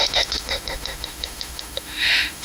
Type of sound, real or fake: fake